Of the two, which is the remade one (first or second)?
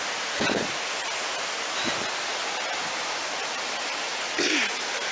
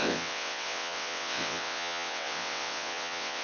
second